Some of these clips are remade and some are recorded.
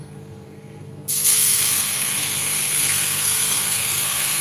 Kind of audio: remade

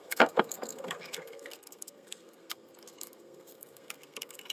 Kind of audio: remade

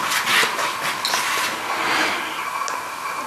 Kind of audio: recorded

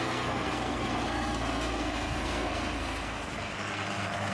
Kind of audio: remade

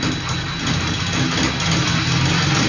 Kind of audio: recorded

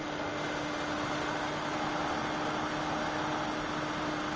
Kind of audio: recorded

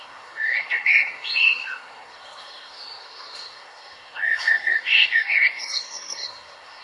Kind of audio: remade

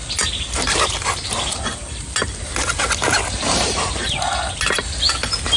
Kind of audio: recorded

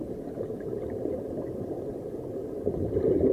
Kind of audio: recorded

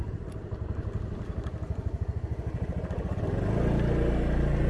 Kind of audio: recorded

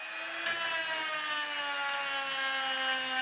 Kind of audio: recorded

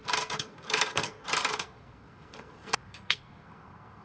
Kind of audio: remade